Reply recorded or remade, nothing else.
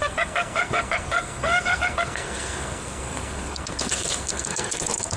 remade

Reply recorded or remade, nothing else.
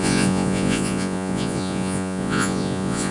remade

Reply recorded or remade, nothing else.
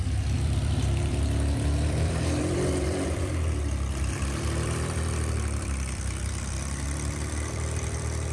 remade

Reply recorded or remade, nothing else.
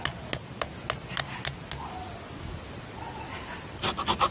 recorded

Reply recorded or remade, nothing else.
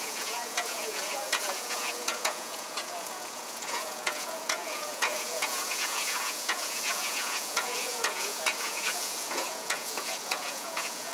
remade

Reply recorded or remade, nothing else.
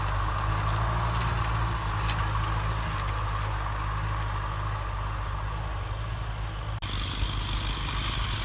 recorded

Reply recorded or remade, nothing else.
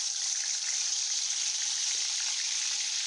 remade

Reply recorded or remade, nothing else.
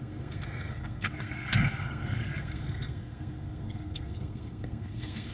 remade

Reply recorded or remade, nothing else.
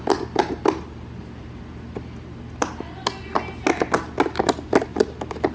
recorded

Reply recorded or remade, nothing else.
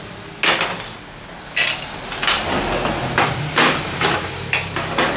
recorded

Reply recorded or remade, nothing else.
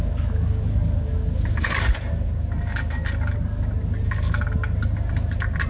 recorded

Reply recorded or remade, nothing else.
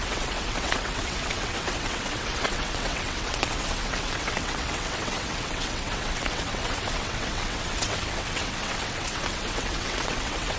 remade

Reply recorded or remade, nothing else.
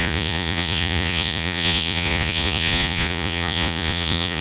remade